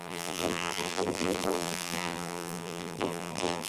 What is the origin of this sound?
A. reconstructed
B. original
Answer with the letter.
A